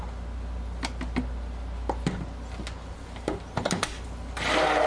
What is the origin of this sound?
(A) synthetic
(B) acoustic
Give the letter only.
B